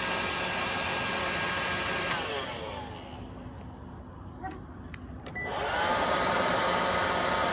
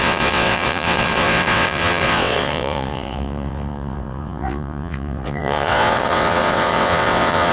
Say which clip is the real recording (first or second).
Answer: first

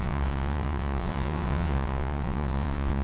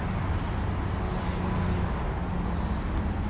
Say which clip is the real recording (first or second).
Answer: second